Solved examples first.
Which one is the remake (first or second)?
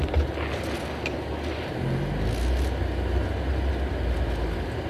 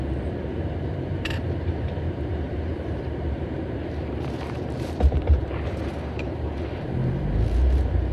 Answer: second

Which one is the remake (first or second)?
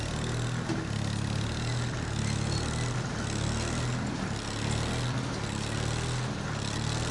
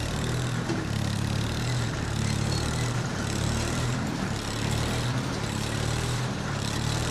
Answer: second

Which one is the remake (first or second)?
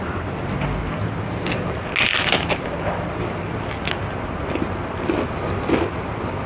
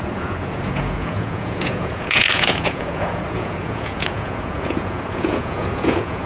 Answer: second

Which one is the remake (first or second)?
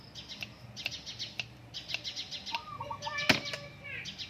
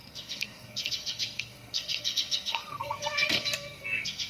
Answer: second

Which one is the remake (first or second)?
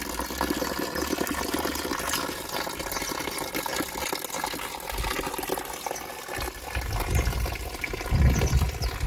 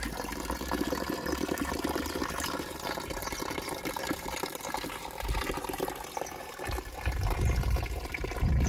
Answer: second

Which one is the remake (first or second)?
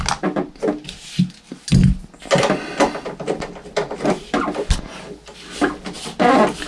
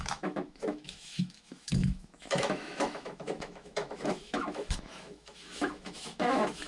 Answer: second